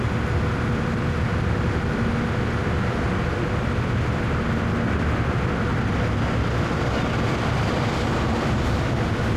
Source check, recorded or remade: recorded